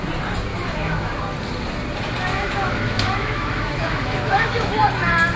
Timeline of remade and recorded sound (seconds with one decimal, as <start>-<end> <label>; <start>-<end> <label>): 0.0-0.5 recorded; 0.5-1.2 remade; 1.2-2.3 recorded; 2.3-4.8 remade; 4.8-5.4 recorded